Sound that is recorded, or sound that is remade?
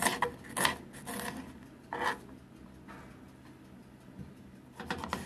recorded